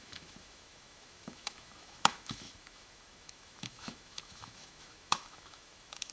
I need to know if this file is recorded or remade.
remade